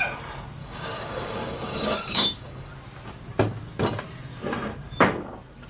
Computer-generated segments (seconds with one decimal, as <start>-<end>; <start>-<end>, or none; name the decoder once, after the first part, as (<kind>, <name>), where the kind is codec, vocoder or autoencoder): 0.6-2.7 (codec, DAC)